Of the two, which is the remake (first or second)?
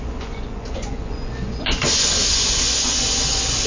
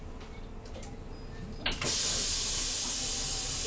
first